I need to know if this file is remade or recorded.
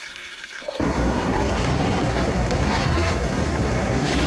remade